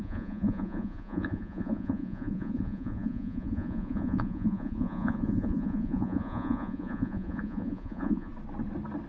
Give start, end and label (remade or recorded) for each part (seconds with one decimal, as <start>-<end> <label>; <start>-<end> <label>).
0.0-8.3 remade; 8.3-9.1 recorded